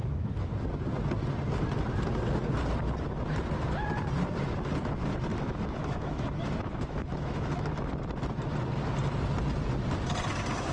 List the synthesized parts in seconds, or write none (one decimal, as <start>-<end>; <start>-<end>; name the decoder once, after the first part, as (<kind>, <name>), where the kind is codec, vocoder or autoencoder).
0.0-0.5 (autoencoder, DAC-VAE); 5.3-7.9